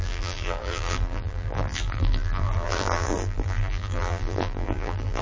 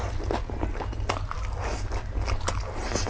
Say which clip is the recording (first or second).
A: second